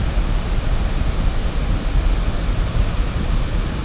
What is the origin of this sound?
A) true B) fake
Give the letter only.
A